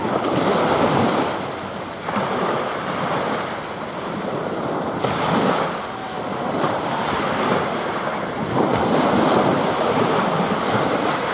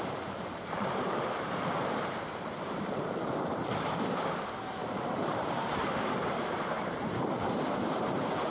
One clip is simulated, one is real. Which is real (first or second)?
first